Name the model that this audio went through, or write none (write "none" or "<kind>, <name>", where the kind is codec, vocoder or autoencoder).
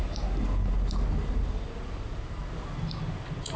none